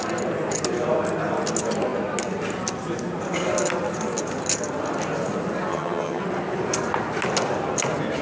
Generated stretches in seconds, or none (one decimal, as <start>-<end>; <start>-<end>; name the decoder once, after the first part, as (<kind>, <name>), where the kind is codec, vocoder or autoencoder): 5.7-6.2 (vocoder, HiFi-GAN)